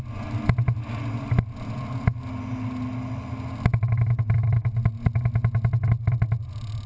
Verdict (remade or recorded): recorded